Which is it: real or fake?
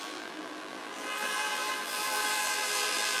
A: fake